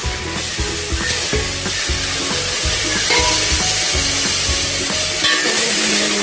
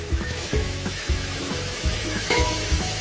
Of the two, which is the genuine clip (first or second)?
first